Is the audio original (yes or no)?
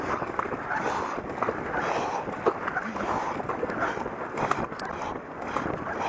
yes